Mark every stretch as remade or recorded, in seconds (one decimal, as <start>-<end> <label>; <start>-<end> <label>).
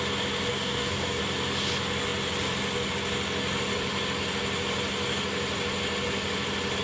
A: 0.0-0.5 recorded; 0.5-1.2 remade; 1.2-6.8 recorded